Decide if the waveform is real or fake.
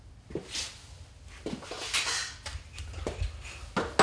real